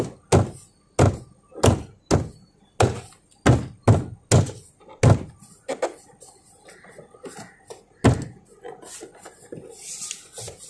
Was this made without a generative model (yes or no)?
yes